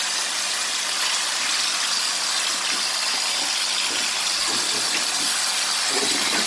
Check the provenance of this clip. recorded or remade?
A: recorded